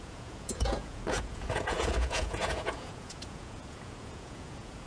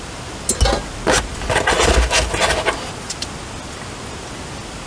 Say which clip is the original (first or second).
second